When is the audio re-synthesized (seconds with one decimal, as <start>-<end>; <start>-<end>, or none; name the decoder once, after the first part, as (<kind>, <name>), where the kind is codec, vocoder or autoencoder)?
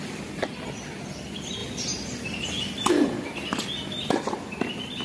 none